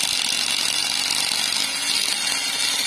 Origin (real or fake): real